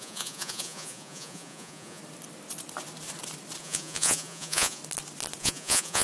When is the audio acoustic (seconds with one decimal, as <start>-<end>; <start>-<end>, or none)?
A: 2.0-3.6; 4.8-5.4